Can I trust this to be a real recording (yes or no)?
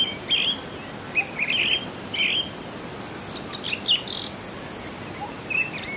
yes